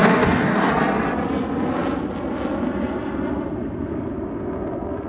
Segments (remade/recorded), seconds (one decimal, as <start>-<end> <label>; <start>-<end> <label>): 0.0-0.7 remade; 0.7-5.1 recorded